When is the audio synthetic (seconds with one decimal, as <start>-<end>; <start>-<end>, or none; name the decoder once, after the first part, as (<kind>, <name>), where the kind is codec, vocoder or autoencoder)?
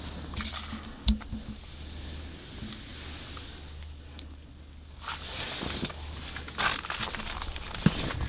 none